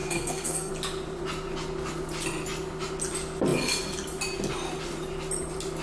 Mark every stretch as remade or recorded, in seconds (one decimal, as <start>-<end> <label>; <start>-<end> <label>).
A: 0.0-0.7 remade; 0.7-5.8 recorded